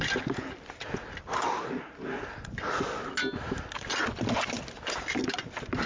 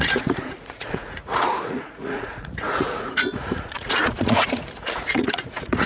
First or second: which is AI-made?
second